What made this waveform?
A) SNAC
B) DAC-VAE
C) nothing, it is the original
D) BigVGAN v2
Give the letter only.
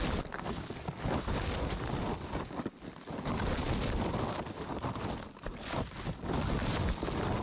C